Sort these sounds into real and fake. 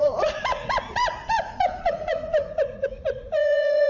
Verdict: fake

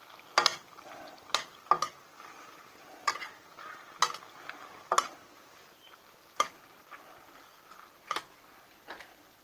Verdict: real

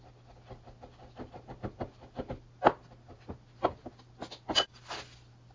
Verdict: real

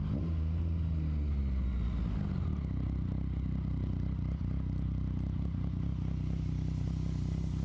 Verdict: real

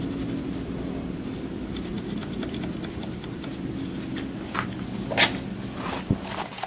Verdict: real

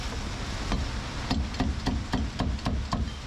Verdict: real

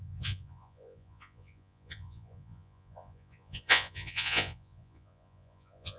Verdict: fake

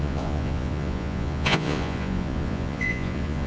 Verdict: fake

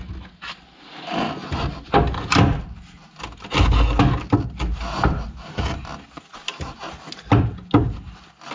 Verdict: real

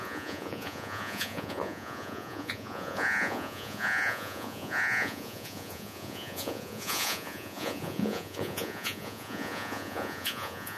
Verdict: fake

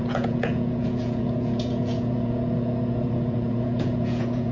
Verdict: fake